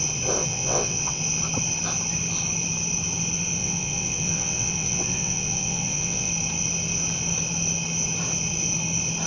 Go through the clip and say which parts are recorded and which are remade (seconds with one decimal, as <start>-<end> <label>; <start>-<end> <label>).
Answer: 0.0-0.4 recorded; 0.4-1.2 remade; 1.2-3.6 recorded; 3.6-6.3 remade; 6.3-9.3 recorded